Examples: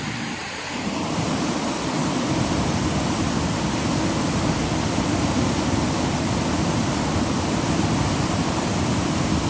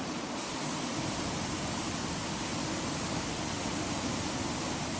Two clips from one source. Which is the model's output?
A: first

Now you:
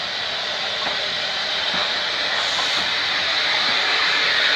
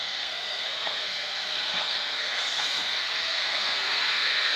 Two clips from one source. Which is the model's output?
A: second